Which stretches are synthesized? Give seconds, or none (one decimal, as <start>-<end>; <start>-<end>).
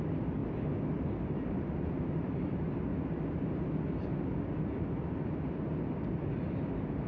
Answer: none